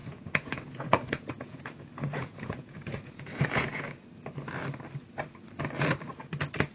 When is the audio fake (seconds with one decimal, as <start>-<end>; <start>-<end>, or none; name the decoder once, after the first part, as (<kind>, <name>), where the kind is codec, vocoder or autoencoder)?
0.0-4.0 (vocoder, Vocos)